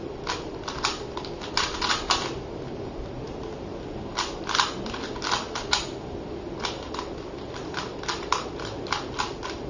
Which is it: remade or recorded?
recorded